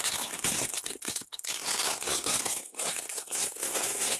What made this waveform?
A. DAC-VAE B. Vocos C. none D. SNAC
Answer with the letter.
D